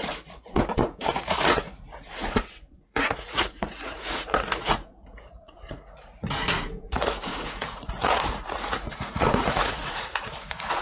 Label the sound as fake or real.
fake